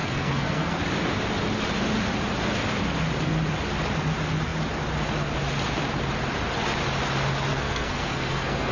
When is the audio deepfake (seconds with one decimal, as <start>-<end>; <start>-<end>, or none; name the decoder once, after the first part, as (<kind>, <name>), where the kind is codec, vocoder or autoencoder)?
0.0-0.8 (codec, SNAC); 7.5-8.7